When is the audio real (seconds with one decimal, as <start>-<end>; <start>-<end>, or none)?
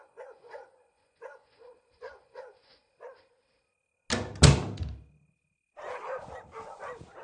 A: 2.8-7.2